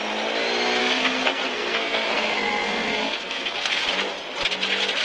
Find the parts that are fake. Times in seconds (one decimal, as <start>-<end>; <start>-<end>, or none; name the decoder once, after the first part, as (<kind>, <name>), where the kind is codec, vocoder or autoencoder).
0.8-3.8 (codec, SNAC)